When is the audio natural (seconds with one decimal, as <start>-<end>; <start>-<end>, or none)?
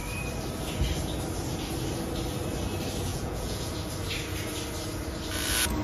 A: 0.0-3.1; 3.7-5.8